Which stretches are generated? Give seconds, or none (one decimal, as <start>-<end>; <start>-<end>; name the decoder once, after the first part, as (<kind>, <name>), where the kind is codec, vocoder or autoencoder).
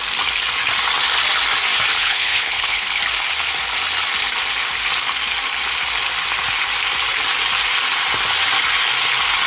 1.9-3.0 (codec, HILCodec)